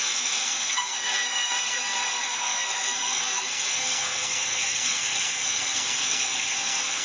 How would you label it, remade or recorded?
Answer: remade